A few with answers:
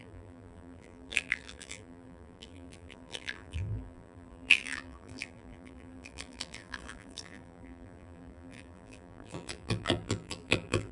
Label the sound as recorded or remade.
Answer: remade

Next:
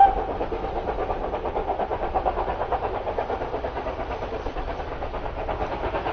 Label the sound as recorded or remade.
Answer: recorded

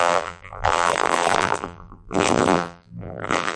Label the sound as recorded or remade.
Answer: remade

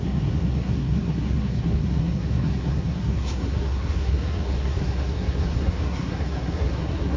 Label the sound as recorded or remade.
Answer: remade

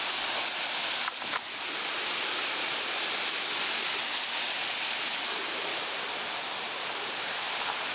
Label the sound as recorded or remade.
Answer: recorded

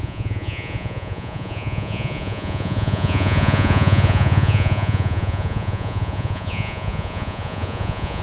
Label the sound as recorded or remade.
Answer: remade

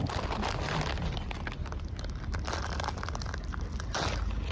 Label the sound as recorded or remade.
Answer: recorded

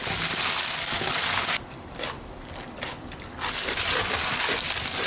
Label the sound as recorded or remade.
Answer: recorded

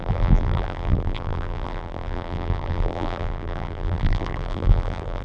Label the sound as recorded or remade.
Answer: remade